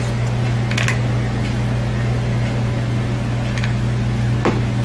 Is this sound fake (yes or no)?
no